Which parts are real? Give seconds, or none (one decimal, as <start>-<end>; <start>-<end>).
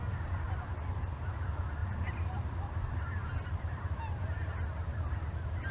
0.0-5.7